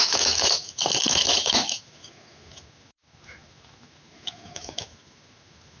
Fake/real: fake